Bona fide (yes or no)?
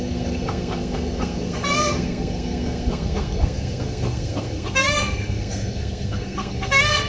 no